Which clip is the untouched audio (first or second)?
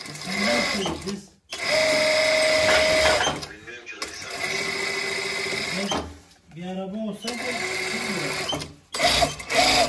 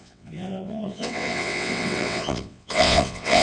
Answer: first